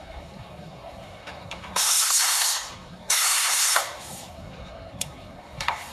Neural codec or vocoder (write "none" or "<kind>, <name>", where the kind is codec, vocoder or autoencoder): codec, SNAC